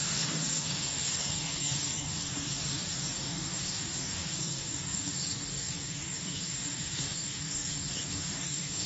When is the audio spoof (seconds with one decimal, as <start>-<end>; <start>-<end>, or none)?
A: 0.0-8.9